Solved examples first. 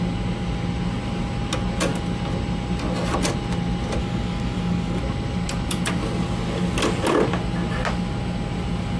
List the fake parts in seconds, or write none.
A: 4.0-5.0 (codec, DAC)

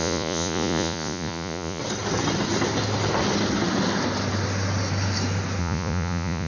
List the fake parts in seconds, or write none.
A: 0.0-1.8 (vocoder, Vocos); 5.6-6.5

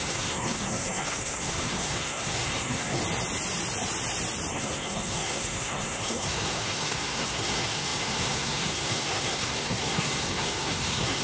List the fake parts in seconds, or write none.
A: 0.0-3.0 (codec, SNAC); 4.5-11.2

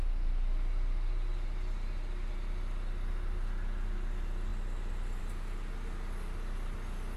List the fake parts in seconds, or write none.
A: none

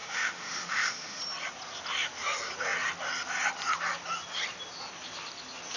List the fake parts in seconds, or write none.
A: 0.0-1.2 (autoencoder, DAC-VAE)

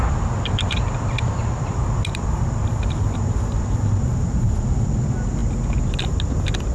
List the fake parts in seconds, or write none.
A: none

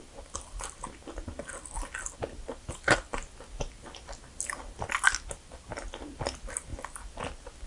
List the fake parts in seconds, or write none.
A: none

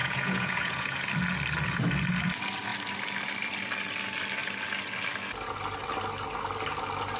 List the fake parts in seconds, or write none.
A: 0.0-1.1 (vocoder, Vocos)